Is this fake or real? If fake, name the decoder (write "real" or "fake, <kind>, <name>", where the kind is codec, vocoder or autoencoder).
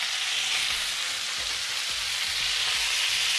real